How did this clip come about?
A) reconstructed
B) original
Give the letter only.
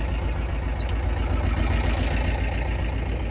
B